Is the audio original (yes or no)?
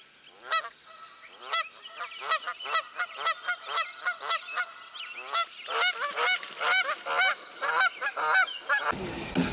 yes